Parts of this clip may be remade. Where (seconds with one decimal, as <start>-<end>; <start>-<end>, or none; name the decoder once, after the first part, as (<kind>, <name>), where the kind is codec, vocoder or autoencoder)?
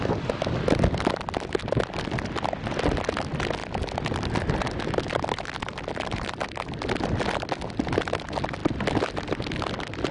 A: none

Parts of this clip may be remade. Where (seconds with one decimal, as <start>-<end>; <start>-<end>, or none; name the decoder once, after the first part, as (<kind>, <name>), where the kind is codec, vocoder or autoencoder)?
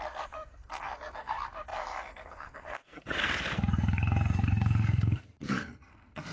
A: 0.0-6.3 (codec, SNAC)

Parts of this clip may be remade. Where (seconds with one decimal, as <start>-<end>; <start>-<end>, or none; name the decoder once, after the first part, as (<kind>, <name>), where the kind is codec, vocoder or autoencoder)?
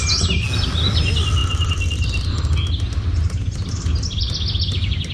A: none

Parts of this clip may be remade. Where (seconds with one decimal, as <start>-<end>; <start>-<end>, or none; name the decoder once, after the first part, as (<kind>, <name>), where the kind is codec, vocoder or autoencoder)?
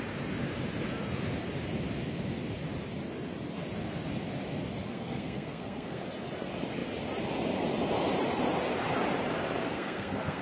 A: 4.8-6.0 (codec, SNAC); 9.6-10.4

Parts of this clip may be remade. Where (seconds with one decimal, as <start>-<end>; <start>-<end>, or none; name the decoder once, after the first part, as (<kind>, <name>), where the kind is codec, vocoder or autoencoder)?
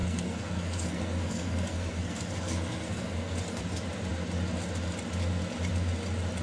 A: 0.0-3.6 (codec, SNAC)